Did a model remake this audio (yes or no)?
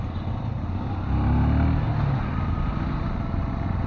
no